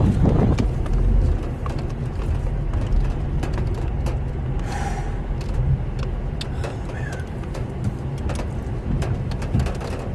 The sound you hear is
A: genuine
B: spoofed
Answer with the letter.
A